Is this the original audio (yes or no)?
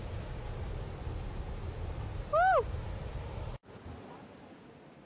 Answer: yes